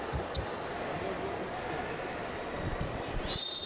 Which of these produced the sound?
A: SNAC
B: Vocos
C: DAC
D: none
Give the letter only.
D